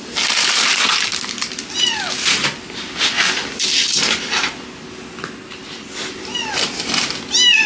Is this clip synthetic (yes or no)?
no